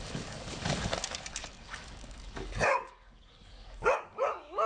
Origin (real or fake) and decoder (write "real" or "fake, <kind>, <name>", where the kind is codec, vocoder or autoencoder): fake, codec, DAC